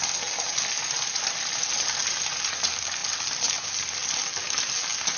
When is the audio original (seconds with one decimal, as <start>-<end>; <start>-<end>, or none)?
0.0-5.2